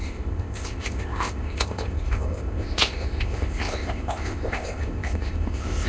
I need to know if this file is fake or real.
fake